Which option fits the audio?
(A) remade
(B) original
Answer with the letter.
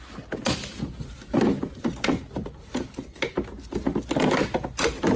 B